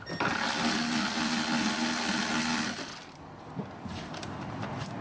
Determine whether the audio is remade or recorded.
recorded